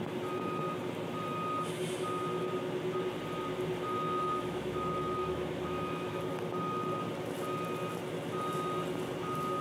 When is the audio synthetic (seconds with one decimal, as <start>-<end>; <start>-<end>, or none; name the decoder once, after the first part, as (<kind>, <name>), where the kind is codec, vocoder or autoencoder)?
3.9-6.2 (autoencoder, DAC-VAE)